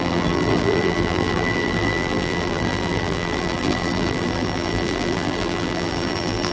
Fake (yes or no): yes